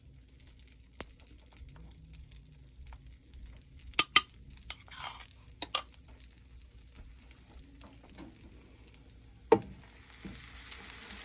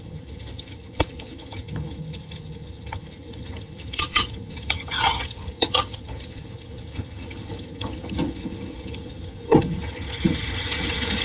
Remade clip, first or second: second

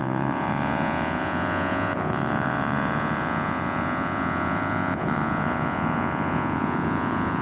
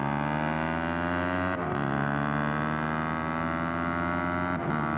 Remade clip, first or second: first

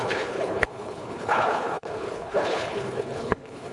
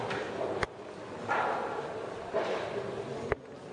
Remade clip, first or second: first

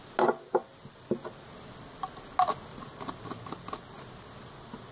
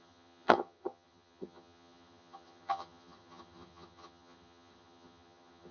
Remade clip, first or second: second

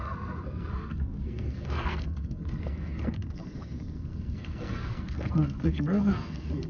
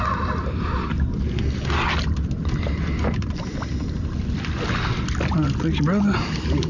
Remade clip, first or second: first